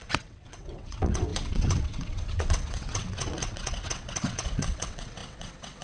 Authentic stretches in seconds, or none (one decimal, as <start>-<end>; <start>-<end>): none